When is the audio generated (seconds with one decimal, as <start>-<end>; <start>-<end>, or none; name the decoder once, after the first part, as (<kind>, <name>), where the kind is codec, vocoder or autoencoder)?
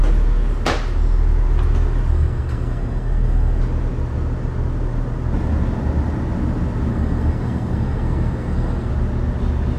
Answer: 2.1-3.6 (codec, SNAC); 6.9-8.9